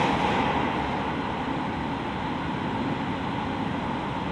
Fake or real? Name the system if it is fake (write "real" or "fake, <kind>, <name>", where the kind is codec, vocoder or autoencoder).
real